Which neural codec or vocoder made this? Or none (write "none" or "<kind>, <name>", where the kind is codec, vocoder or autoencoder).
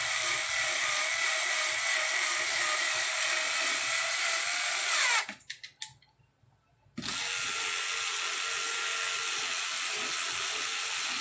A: none